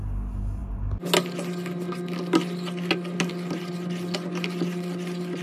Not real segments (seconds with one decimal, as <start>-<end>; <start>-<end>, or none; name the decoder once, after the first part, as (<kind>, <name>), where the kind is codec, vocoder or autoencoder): none